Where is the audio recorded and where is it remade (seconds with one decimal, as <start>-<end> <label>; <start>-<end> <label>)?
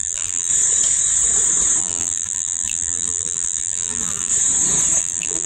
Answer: 0.0-0.5 remade; 0.5-1.8 recorded; 1.8-4.3 remade; 4.3-5.0 recorded; 5.0-5.5 remade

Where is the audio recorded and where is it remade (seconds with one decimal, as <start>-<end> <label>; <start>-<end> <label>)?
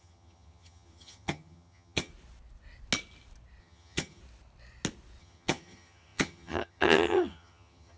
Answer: 0.0-2.1 remade; 2.1-3.6 recorded; 3.6-4.2 remade; 4.2-5.2 recorded; 5.2-8.0 remade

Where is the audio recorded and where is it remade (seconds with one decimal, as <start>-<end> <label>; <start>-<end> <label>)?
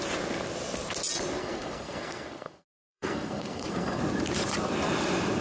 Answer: 0.0-1.4 recorded; 1.4-4.0 remade; 4.0-5.4 recorded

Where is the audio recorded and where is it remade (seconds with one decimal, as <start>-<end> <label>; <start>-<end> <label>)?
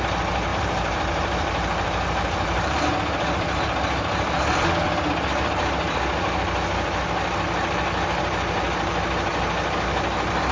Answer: 0.0-0.5 recorded; 0.5-2.9 remade; 2.9-10.5 recorded